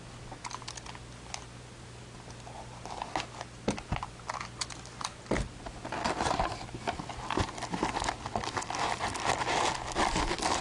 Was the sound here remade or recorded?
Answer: recorded